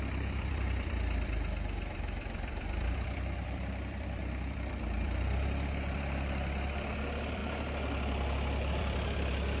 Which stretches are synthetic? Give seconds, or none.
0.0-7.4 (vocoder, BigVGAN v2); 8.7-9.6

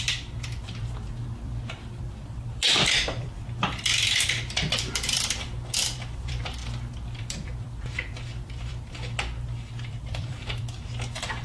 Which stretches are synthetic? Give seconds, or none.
0.0-11.4 (vocoder, BigVGAN v2)

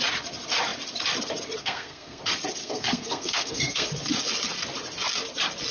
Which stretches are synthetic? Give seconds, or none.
1.6-2.2 (codec, SNAC); 2.6-3.9

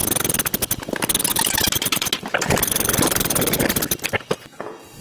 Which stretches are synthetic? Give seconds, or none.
1.3-4.1 (vocoder, BigVGAN v2)

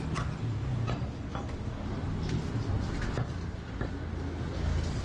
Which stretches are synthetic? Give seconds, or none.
none